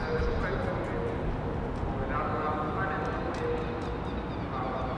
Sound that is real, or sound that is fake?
real